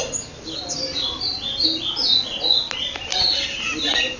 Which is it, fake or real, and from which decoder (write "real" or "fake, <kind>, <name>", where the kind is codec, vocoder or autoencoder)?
real